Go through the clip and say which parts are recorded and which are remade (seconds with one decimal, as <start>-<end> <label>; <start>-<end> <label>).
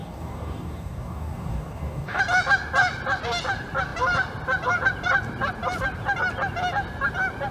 0.0-2.2 remade; 2.2-7.5 recorded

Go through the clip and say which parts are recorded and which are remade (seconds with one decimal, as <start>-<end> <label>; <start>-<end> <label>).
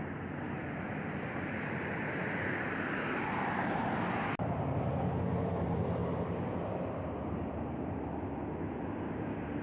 0.0-9.6 recorded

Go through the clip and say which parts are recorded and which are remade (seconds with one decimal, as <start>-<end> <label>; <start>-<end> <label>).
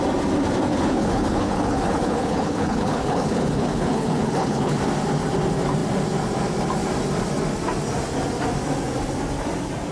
0.0-0.7 recorded; 0.7-4.8 remade; 4.8-9.9 recorded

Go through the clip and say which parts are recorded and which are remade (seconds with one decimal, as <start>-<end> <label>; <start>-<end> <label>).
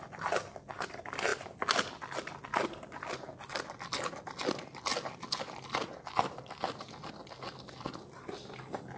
0.0-9.0 recorded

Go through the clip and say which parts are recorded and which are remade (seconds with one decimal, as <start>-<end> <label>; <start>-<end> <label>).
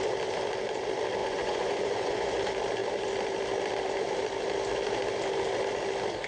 0.0-1.2 recorded; 1.2-2.4 remade; 2.4-6.3 recorded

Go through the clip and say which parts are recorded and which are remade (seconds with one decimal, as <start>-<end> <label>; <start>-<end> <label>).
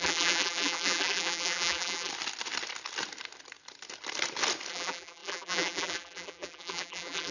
0.0-2.1 remade; 2.1-4.7 recorded; 4.7-7.3 remade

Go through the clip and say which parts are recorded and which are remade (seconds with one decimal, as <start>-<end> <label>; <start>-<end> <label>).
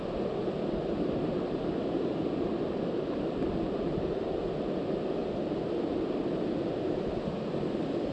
0.0-8.1 remade